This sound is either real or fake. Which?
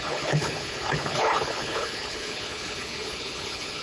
fake